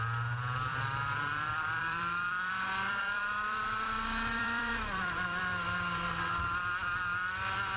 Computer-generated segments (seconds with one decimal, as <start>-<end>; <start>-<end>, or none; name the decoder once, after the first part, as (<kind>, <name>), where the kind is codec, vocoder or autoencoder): 0.7-5.4 (vocoder, BigVGAN v2)